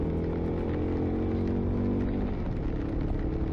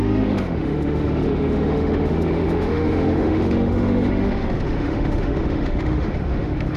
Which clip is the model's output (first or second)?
second